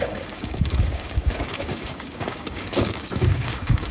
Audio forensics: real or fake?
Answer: fake